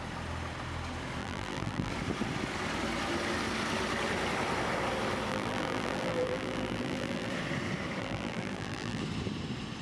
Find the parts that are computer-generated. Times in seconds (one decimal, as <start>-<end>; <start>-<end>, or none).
1.2-1.9; 5.3-7.3; 8.0-9.0

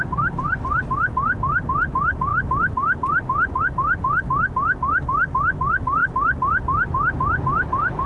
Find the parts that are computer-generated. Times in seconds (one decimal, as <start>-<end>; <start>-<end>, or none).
none

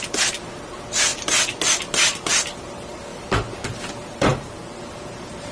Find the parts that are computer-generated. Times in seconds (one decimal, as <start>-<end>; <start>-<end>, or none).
0.0-1.1; 2.5-5.5

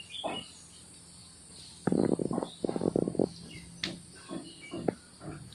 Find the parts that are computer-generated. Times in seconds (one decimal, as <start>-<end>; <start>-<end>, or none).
none